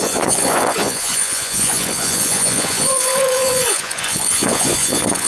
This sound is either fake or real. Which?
fake